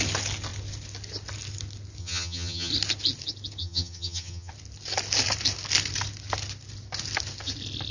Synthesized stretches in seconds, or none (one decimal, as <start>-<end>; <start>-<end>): 2.0-2.7; 3.6-4.5